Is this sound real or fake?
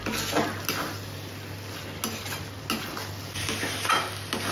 real